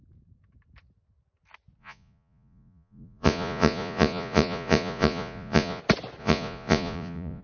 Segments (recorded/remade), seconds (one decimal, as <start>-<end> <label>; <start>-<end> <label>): 0.0-1.8 recorded; 1.8-5.8 remade; 5.8-6.2 recorded; 6.2-7.4 remade